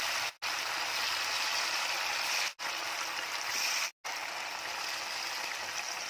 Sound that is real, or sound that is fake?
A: real